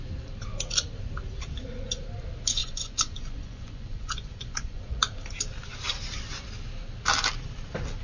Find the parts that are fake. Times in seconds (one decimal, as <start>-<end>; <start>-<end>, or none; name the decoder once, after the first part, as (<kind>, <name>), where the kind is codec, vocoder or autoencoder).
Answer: 2.6-5.0 (vocoder, Vocos)